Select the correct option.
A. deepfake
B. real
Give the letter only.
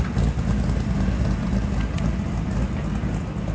B